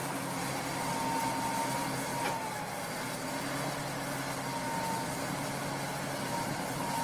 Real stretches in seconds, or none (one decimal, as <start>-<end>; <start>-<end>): 0.0-1.6; 2.1-6.3